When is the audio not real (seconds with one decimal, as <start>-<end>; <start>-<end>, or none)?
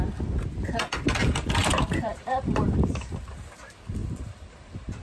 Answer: 1.2-3.5; 4.0-5.0